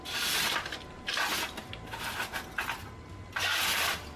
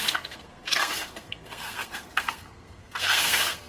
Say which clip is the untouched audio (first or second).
first